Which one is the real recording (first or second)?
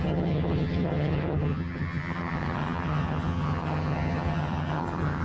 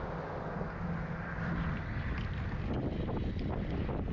second